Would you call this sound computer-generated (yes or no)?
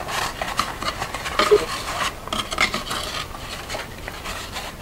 no